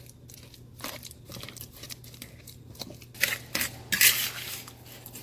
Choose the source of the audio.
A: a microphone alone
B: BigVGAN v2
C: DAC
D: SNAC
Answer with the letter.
A